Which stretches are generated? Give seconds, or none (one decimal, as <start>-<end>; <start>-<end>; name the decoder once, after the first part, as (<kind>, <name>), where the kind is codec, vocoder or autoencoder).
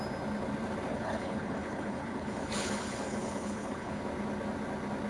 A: 0.9-4.0 (codec, HILCodec)